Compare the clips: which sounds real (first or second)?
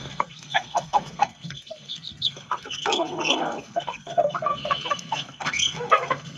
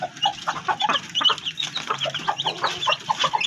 second